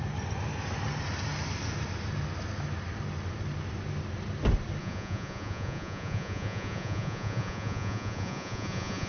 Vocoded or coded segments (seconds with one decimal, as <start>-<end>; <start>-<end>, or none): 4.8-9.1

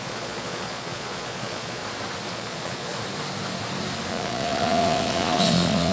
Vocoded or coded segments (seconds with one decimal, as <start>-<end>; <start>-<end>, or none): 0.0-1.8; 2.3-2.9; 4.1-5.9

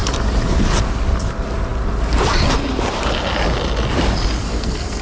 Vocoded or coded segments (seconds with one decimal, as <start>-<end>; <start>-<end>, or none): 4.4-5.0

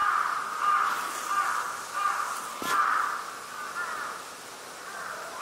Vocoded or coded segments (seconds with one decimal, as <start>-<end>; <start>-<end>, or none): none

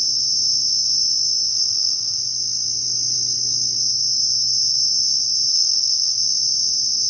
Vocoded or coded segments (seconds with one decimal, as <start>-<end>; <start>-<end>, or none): 1.5-2.2; 5.5-6.2

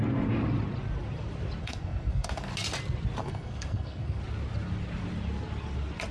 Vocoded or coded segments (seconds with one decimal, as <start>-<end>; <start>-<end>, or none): 1.6-2.5; 3.2-4.2

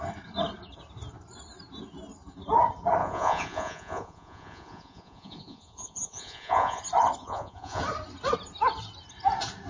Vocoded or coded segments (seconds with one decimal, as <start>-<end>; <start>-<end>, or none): 3.0-6.8; 7.2-7.8

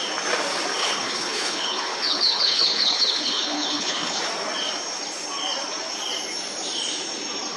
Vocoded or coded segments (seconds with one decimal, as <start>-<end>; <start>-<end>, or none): 0.8-4.2